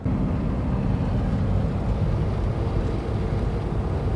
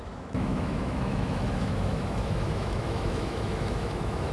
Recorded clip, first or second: first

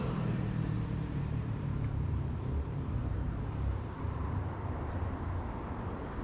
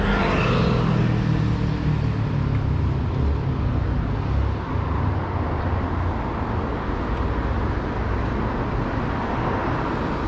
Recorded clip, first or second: second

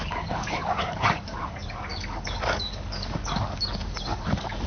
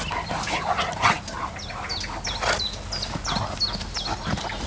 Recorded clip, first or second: second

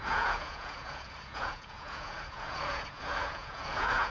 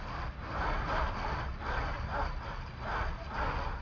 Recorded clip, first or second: second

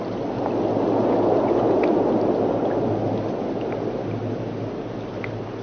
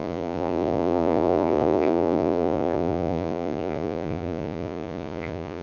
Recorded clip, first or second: first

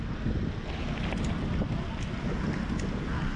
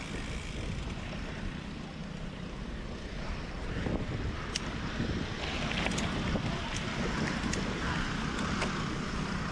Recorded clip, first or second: first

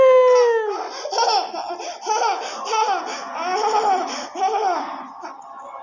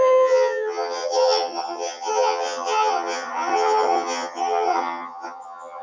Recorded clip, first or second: first